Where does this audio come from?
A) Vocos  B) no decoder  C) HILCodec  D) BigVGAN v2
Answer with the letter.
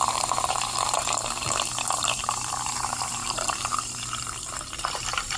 D